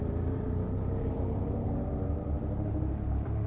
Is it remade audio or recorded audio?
remade